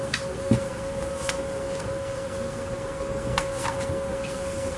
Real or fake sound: fake